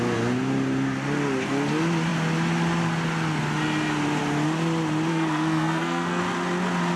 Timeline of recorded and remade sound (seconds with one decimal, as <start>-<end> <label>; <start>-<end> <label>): 0.0-5.1 recorded; 5.1-6.2 remade; 6.2-7.0 recorded